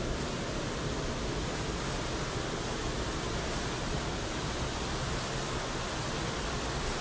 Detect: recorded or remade recorded